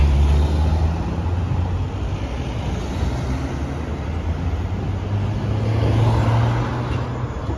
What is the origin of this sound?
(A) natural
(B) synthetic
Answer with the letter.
A